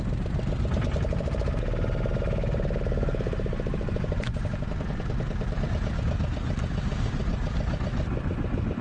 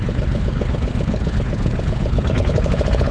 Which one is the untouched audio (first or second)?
first